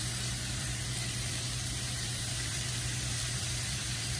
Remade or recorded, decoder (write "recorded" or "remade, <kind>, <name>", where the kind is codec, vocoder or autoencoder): remade, vocoder, BigVGAN v2